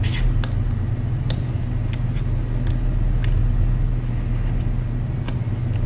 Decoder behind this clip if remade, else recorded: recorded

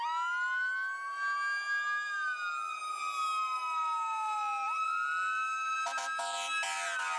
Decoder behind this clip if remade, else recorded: recorded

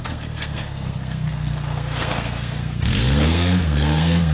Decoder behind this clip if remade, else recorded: remade, codec, SNAC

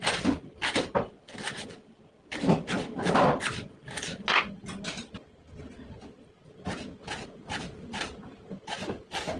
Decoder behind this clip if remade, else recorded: recorded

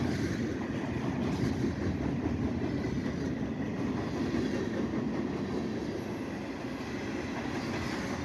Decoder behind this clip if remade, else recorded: recorded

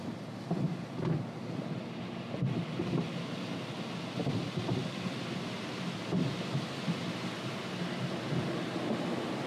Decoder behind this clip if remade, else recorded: recorded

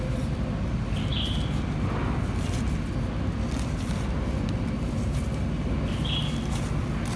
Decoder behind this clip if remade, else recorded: recorded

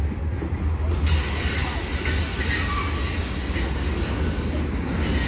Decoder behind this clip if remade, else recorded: recorded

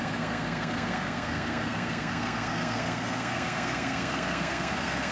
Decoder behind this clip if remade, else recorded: remade, codec, SNAC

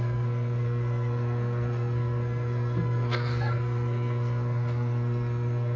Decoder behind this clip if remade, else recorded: remade, codec, SNAC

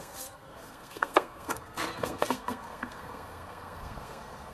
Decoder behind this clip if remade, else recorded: remade, codec, SNAC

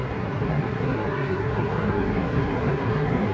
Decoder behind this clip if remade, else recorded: remade, codec, SNAC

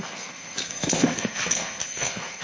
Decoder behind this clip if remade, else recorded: remade, codec, SNAC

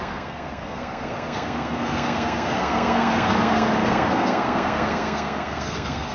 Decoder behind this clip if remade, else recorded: remade, codec, SNAC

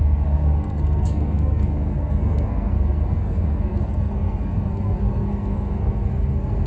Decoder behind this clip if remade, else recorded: remade, codec, SNAC